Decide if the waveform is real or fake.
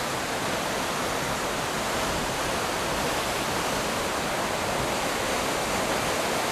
real